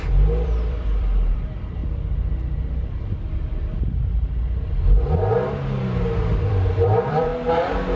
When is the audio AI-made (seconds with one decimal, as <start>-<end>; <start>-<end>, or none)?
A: 0.0-1.8; 6.4-7.3